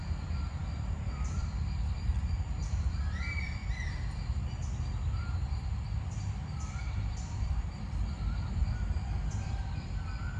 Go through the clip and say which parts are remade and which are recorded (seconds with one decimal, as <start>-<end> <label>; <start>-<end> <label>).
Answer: 0.0-3.6 remade; 3.6-6.4 recorded; 6.4-10.4 remade